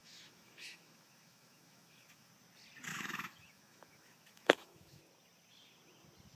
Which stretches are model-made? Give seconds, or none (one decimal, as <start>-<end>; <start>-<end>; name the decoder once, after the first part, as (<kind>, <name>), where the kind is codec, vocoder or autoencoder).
0.0-2.3 (autoencoder, DAC-VAE); 2.9-5.0